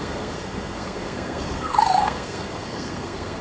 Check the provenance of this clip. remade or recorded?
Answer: remade